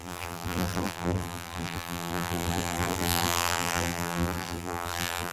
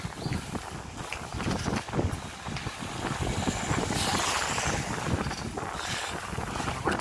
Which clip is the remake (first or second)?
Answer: first